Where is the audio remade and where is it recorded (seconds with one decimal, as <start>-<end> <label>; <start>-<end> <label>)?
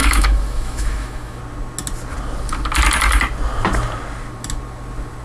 0.0-1.4 remade; 1.4-5.2 recorded